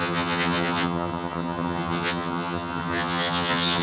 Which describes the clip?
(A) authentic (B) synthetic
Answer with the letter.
B